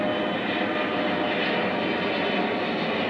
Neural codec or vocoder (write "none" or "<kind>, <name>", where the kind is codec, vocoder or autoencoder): none